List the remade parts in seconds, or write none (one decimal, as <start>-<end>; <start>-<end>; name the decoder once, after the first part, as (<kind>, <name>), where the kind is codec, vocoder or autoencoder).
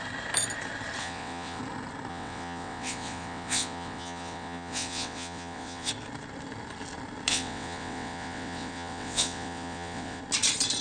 1.0-1.6 (vocoder, WaveNeXt); 2.1-5.9; 7.3-10.2